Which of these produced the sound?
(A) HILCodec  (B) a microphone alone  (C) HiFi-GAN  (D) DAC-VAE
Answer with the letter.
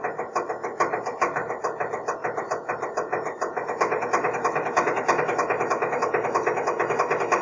B